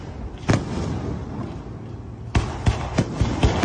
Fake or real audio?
real